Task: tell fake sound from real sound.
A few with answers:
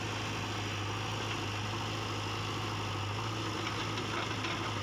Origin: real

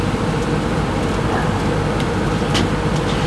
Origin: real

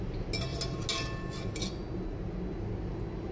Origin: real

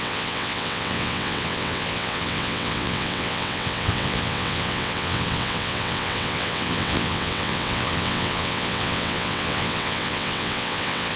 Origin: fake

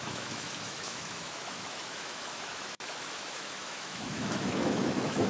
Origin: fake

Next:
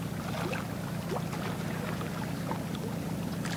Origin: real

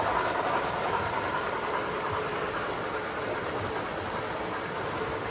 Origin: real